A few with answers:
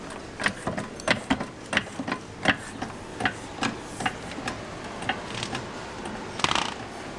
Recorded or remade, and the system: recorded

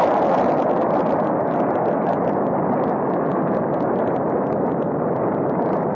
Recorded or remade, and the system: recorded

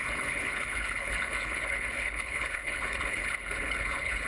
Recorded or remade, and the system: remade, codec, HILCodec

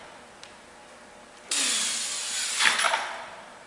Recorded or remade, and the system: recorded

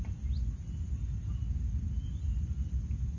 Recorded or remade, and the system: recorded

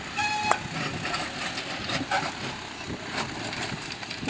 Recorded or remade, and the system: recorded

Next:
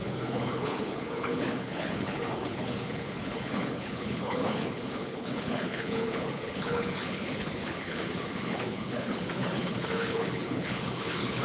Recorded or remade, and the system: remade, codec, HILCodec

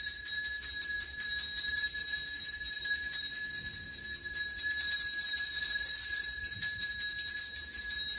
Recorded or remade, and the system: recorded